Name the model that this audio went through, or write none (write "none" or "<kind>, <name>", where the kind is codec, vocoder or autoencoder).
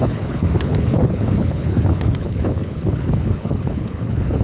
codec, HILCodec